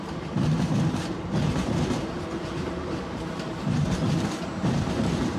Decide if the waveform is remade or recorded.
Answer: remade